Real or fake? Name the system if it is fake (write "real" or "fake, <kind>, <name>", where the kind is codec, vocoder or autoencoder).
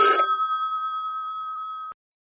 real